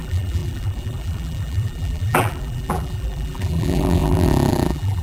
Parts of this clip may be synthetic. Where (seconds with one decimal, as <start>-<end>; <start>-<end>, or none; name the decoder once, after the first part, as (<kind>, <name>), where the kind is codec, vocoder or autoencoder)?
0.0-5.0 (vocoder, BigVGAN v2)